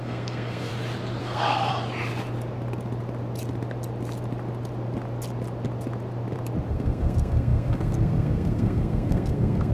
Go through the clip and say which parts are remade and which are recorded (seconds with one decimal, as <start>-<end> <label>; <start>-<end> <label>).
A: 0.0-0.7 remade; 0.7-1.2 recorded; 1.2-1.7 remade; 1.7-6.7 recorded; 6.7-9.7 remade